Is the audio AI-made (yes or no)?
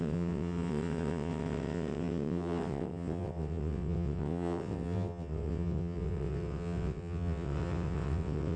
yes